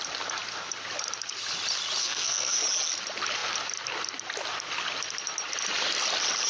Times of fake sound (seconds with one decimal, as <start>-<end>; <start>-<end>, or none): 2.0-2.6